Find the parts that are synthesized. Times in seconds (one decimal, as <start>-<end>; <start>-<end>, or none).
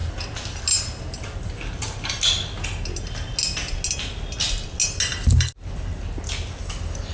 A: none